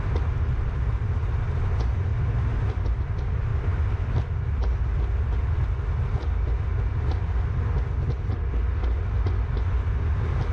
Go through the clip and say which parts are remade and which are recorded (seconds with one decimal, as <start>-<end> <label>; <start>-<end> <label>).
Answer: 0.0-3.5 recorded; 3.5-4.3 remade; 4.3-8.8 recorded; 8.8-9.3 remade; 9.3-10.5 recorded